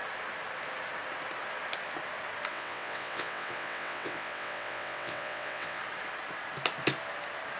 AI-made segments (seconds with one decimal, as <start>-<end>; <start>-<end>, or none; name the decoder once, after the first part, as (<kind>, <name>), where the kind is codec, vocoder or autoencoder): 2.5-5.8 (vocoder, WaveNeXt)